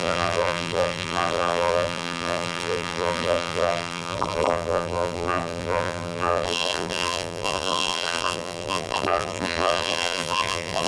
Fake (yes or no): yes